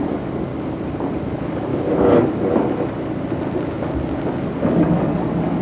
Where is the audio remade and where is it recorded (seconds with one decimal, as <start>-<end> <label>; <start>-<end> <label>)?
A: 0.0-0.5 remade; 0.5-1.2 recorded; 1.2-1.7 remade; 1.7-4.3 recorded; 4.3-5.6 remade